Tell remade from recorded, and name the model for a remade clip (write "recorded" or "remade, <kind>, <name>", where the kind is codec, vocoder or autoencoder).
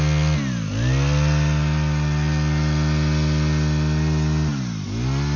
recorded